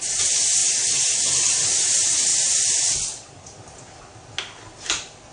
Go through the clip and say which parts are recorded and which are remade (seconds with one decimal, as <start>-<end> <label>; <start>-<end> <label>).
0.0-5.3 recorded